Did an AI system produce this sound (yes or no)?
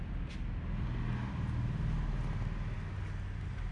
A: no